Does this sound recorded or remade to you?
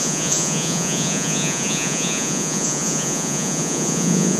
remade